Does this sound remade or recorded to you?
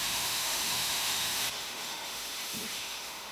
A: remade